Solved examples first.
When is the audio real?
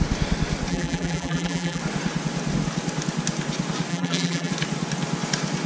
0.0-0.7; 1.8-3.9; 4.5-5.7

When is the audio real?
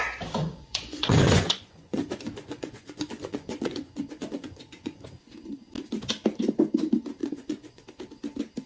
0.0-0.4; 5.0-7.2; 7.8-8.7